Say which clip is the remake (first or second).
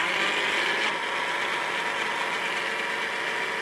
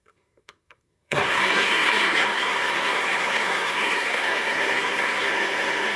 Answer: second